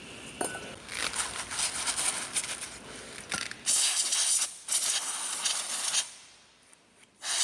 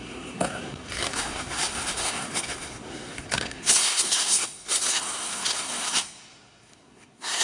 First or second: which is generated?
second